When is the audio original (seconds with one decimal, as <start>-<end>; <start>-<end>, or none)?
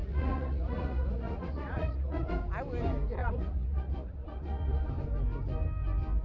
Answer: 2.3-3.2; 4.9-6.2